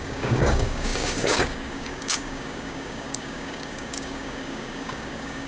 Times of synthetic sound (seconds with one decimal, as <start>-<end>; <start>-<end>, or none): 0.0-5.5